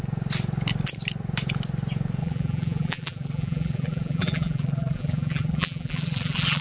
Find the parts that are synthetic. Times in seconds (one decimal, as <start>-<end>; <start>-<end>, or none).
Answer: 2.2-6.6